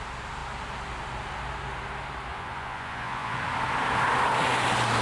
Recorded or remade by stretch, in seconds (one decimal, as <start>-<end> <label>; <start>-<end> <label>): 0.0-2.3 recorded; 2.3-3.4 remade; 3.4-5.0 recorded